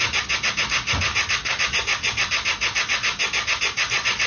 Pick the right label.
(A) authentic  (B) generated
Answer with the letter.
A